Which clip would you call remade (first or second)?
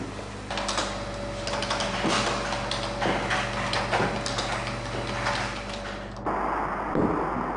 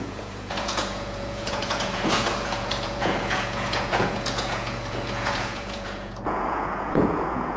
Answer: second